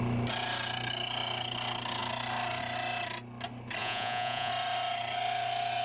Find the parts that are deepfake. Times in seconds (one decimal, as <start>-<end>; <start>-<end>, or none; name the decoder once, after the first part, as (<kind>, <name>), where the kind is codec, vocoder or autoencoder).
3.8-4.5 (vocoder, Vocos)